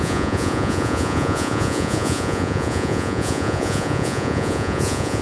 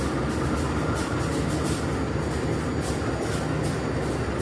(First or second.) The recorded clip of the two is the second